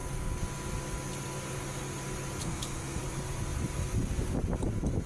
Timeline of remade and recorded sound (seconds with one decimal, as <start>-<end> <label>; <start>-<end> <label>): 0.0-2.4 recorded; 2.4-3.0 remade; 3.0-5.1 recorded